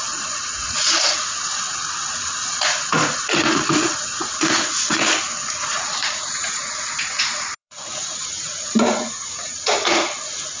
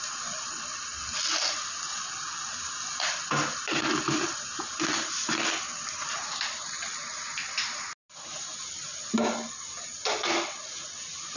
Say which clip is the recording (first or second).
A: second